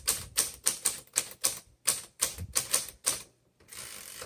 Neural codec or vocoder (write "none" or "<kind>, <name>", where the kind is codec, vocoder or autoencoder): vocoder, BigVGAN v2